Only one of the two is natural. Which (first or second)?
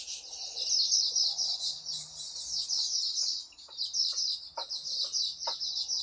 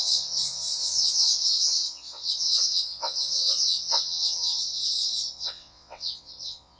first